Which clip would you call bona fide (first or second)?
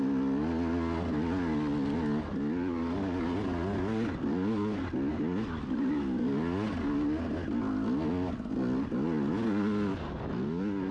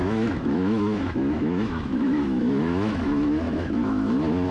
first